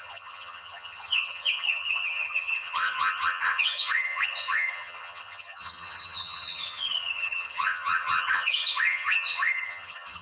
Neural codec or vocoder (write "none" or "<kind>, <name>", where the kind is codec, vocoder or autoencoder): vocoder, HiFi-GAN